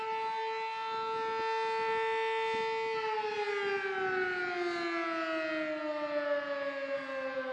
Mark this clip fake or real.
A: real